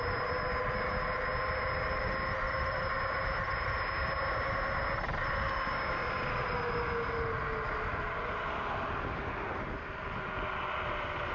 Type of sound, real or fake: real